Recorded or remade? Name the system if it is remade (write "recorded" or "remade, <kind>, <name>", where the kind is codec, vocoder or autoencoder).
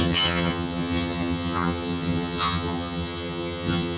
remade, vocoder, HiFi-GAN